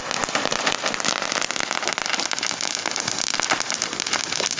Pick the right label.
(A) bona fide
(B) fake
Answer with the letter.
A